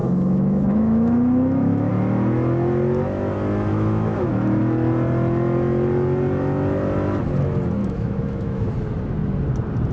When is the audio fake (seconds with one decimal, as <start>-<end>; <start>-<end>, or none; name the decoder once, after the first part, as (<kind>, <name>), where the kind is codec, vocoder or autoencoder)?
0.0-1.9 (autoencoder, DAC-VAE); 3.7-4.6; 7.8-8.7